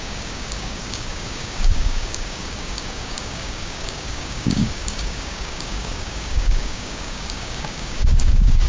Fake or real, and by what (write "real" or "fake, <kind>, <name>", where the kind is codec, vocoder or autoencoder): fake, codec, DAC